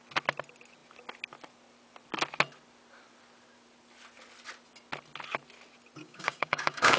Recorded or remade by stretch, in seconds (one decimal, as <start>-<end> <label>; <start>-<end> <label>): 0.0-6.0 recorded; 6.0-7.0 remade